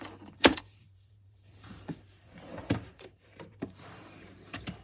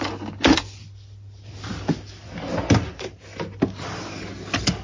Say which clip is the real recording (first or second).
second